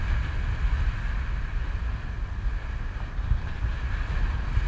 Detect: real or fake real